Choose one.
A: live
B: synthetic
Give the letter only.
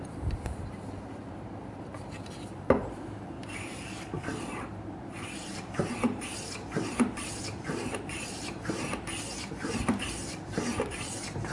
B